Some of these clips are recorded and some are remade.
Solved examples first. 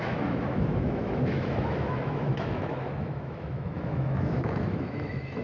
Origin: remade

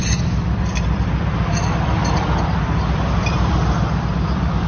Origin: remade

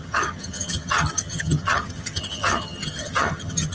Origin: remade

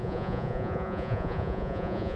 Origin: remade